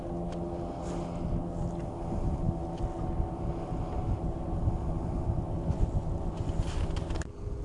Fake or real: real